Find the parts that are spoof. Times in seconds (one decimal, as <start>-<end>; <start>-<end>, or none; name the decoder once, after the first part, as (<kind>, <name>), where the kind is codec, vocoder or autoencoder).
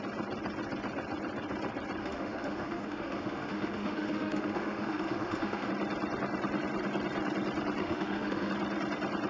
2.0-5.7 (autoencoder, DAC-VAE); 7.8-8.5